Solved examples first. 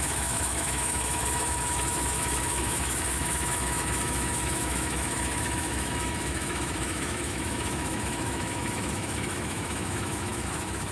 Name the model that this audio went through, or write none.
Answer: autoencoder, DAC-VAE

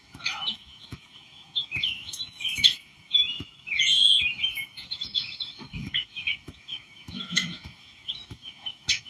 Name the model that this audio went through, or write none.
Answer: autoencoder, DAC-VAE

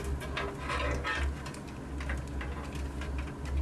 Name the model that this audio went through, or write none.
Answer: none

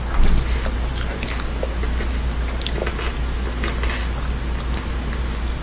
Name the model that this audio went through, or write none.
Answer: none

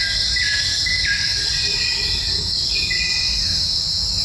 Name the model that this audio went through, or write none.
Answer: none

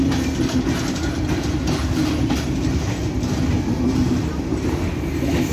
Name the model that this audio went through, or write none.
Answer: none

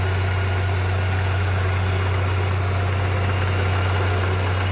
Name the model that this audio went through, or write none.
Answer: none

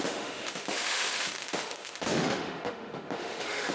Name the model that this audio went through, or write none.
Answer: autoencoder, DAC-VAE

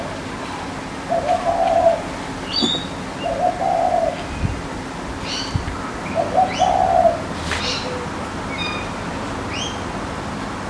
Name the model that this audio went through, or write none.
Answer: none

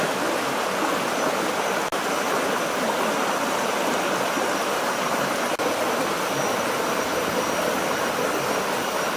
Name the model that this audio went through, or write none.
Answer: none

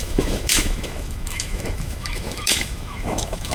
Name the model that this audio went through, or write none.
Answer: autoencoder, DAC-VAE